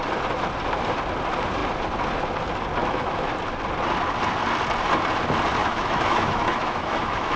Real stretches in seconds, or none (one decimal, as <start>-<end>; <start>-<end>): 0.0-2.8; 3.3-5.6